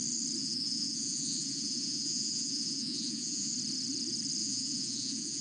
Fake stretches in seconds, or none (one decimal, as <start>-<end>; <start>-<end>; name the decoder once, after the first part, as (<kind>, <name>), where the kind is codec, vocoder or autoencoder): 0.4-3.5 (vocoder, Vocos); 4.4-5.4